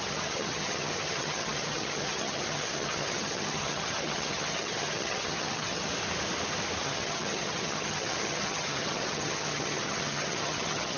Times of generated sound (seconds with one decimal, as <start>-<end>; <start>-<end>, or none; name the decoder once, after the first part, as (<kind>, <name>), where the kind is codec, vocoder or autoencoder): 0.0-5.9 (vocoder, HiFi-GAN); 6.8-11.0